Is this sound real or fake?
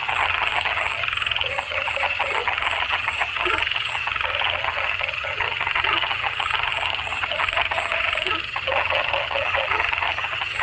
fake